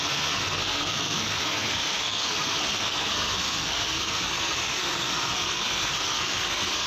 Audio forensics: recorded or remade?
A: remade